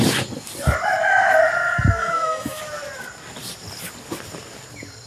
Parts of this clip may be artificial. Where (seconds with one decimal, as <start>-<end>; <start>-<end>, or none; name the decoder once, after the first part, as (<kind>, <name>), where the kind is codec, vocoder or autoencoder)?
2.0-2.6 (autoencoder, DAC-VAE)